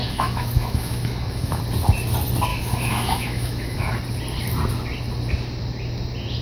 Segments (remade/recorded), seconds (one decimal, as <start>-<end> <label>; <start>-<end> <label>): 0.0-1.6 remade; 1.6-2.5 recorded; 2.5-3.9 remade; 3.9-6.4 recorded